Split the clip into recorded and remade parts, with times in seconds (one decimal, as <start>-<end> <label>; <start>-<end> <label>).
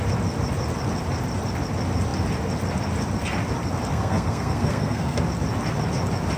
0.0-3.9 recorded; 3.9-5.2 remade; 5.2-6.4 recorded